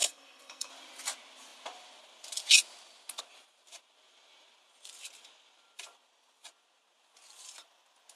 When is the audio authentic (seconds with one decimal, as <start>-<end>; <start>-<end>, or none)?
0.7-8.2

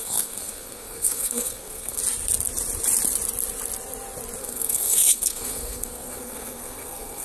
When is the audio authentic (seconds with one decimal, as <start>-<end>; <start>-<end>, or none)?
2.0-4.4